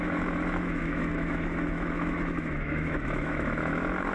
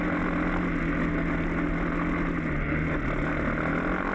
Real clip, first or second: second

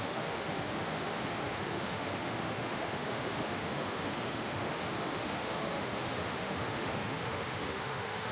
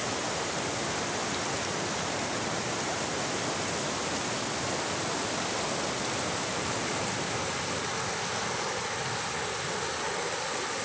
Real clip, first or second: second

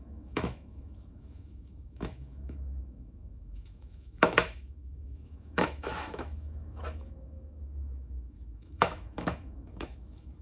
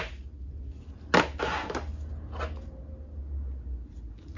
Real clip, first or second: second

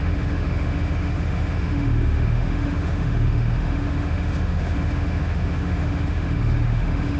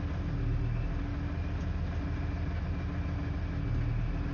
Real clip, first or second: second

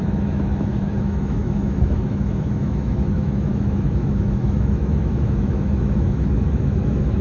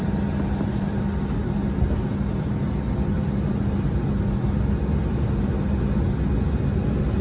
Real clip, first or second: second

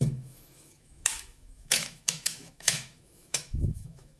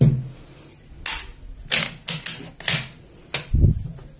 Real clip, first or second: second